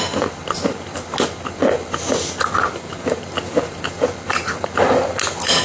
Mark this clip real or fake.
real